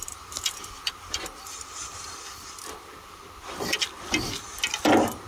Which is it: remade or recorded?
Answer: recorded